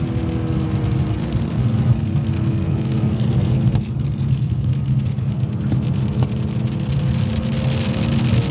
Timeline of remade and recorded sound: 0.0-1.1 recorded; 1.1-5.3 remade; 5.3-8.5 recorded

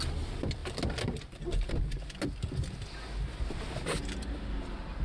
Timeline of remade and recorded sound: 0.0-5.0 recorded